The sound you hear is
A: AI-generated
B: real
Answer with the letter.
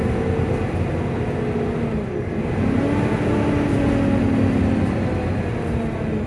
B